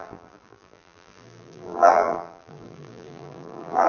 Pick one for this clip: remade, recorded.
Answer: remade